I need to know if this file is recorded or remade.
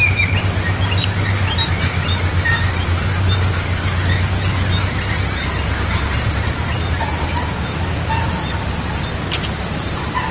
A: recorded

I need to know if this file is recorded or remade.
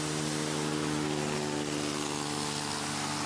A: recorded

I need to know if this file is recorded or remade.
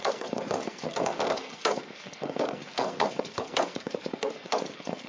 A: remade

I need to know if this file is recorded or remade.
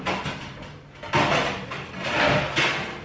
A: recorded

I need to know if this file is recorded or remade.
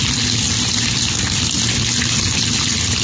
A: recorded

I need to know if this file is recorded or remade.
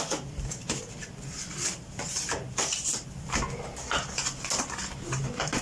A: recorded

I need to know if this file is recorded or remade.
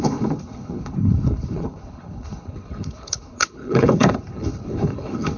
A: remade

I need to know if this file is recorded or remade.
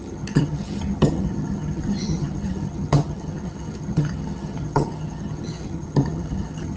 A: remade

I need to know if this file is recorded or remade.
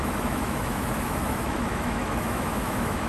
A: remade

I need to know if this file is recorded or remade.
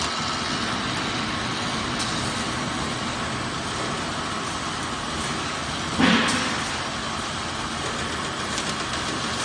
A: recorded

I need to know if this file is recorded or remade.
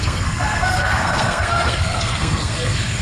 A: remade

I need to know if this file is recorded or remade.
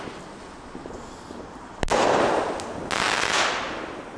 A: recorded